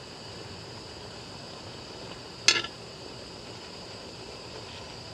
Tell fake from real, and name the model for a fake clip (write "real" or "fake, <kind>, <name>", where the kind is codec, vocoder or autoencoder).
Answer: real